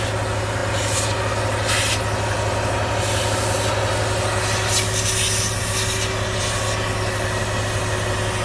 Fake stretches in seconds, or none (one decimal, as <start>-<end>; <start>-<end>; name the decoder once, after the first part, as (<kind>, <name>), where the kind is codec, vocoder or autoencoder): none